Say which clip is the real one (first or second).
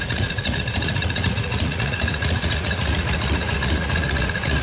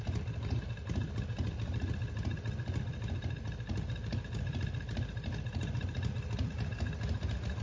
second